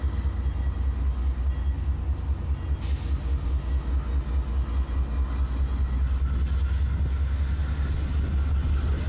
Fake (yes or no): no